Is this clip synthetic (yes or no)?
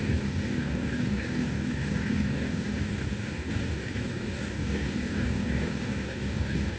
yes